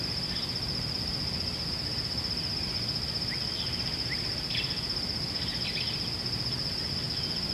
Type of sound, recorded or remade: recorded